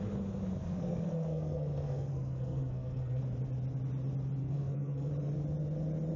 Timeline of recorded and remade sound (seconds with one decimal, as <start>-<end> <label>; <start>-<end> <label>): 0.0-0.6 recorded; 0.6-3.2 remade; 3.2-4.4 recorded; 4.4-5.1 remade; 5.1-6.2 recorded